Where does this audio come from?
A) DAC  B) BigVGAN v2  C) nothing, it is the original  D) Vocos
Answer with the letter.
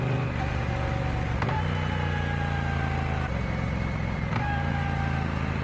C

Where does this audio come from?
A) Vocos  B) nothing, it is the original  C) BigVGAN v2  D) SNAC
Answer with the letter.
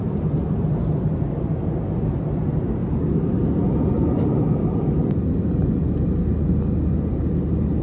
B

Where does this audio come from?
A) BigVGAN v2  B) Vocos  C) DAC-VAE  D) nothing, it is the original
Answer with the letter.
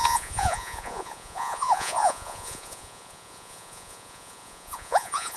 B